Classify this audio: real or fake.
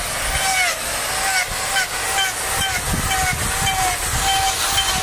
real